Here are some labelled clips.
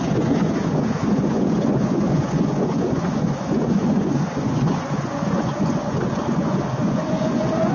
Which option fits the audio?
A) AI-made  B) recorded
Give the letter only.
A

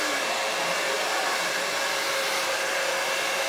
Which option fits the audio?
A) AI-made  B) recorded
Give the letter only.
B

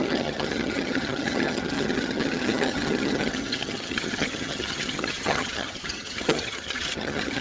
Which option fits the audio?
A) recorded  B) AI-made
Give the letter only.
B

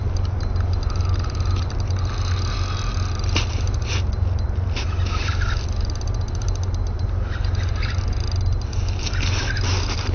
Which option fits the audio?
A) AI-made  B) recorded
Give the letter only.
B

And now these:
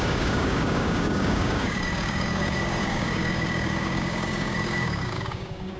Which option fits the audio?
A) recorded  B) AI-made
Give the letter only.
B